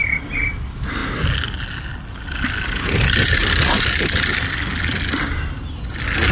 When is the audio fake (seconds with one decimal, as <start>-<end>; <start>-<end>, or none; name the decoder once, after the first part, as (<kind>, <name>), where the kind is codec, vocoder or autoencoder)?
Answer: none